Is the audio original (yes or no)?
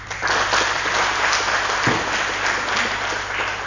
yes